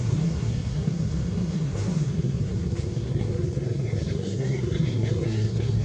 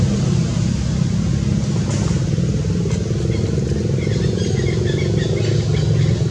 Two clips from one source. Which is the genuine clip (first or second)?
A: second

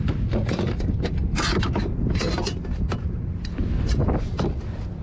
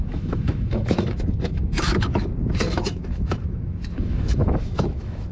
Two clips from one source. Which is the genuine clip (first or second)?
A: first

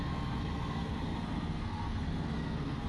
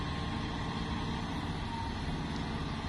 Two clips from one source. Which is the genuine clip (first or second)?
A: second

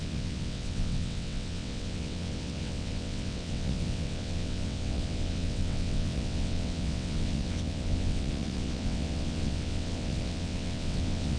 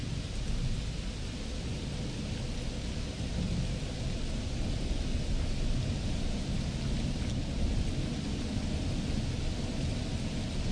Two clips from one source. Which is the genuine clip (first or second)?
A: second